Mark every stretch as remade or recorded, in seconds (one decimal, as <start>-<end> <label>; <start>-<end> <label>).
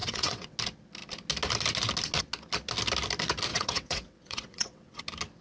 0.0-0.6 remade; 0.6-3.5 recorded; 3.5-5.0 remade; 5.0-5.4 recorded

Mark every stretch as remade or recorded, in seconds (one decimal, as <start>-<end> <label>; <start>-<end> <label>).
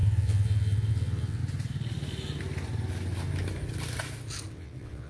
0.0-1.4 remade; 1.4-4.5 recorded; 4.5-5.1 remade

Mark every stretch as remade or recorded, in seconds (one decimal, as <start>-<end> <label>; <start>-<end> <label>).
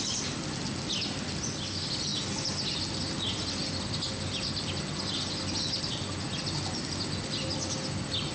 0.0-8.3 recorded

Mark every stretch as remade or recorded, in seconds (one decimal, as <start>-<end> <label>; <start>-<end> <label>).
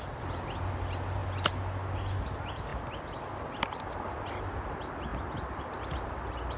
0.0-6.6 recorded